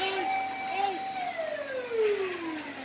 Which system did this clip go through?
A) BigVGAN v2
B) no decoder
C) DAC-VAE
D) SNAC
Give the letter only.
B